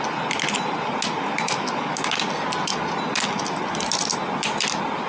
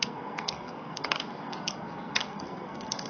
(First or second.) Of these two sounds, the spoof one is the second